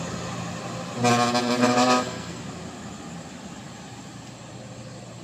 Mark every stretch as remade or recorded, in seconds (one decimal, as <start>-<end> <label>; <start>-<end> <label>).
0.0-1.6 recorded; 1.6-2.4 remade; 2.4-5.2 recorded